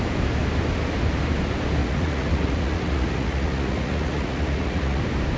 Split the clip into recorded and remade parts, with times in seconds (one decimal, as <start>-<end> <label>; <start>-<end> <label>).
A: 0.0-1.8 recorded; 1.8-5.0 remade; 5.0-5.4 recorded